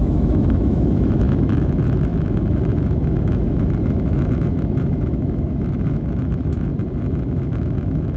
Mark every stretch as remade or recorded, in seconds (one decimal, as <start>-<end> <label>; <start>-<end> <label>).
0.0-6.7 remade; 6.7-7.2 recorded; 7.2-8.2 remade